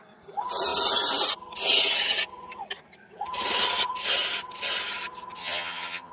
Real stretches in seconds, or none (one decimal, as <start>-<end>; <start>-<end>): 0.0-5.4